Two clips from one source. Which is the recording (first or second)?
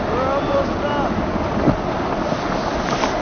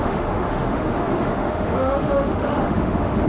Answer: first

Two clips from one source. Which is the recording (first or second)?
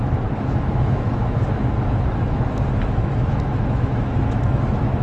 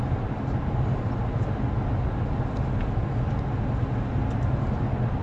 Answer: second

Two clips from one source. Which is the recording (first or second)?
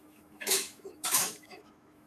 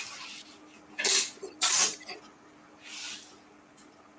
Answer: second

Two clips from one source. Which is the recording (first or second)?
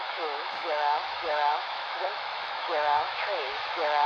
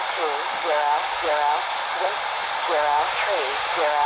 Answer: second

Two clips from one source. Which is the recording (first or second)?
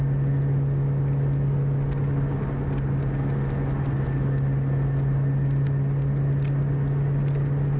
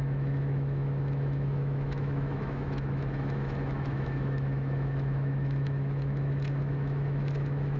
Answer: first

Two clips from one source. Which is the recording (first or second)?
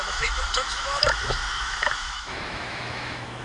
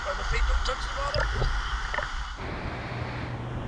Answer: second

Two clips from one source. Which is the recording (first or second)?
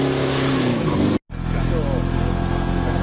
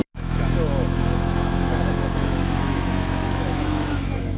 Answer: first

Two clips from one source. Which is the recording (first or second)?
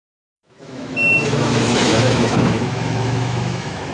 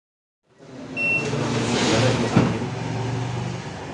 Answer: second